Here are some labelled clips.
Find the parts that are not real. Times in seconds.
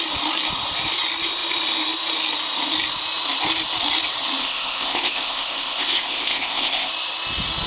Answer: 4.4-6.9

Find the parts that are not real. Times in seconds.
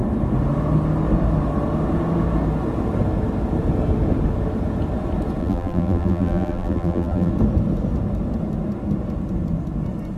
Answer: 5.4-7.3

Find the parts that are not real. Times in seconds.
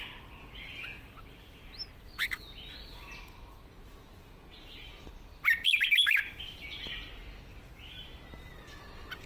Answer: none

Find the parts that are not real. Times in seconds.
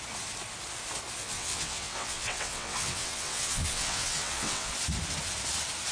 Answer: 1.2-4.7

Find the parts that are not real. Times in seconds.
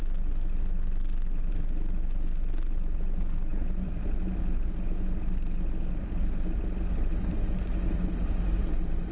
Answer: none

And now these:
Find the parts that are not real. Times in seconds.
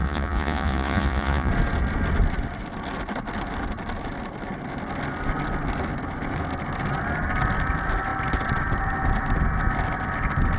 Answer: 0.0-1.5